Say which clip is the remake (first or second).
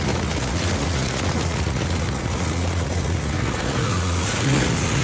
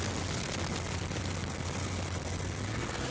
first